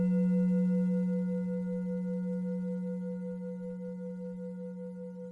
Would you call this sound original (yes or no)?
yes